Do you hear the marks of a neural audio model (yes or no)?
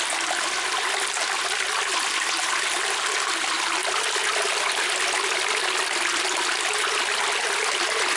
no